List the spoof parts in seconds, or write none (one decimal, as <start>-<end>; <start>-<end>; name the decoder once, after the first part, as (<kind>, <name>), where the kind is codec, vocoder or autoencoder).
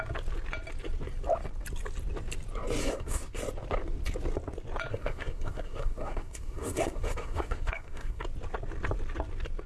2.8-3.4 (codec, SNAC); 4.9-8.2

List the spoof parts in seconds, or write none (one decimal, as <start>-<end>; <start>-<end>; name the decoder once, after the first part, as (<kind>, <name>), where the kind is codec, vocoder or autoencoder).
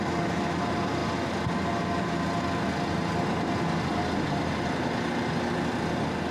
none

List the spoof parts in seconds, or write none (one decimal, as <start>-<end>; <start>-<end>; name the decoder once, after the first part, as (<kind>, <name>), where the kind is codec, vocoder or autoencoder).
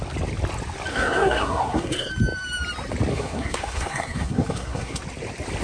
0.9-2.1 (codec, SNAC); 3.1-5.0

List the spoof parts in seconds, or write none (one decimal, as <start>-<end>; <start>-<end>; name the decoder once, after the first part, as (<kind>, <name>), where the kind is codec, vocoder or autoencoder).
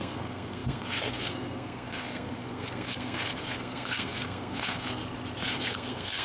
0.0-5.0 (codec, SNAC); 5.5-6.2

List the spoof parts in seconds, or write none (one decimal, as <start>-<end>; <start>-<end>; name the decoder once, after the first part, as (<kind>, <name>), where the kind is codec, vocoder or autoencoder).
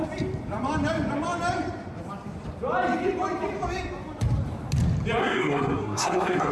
5.2-6.5 (codec, SNAC)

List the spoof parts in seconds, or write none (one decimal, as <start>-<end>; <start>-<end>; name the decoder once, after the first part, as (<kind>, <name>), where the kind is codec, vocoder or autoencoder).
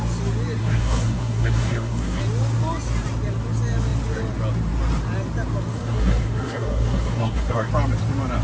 0.6-2.2 (codec, SNAC); 5.7-7.7